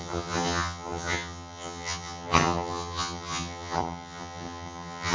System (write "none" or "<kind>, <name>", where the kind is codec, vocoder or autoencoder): vocoder, HiFi-GAN